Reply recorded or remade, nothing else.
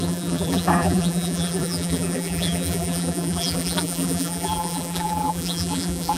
remade